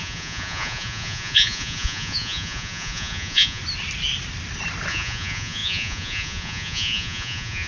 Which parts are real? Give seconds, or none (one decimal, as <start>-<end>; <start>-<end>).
3.6-4.9